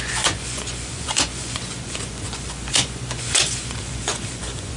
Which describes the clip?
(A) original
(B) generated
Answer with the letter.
B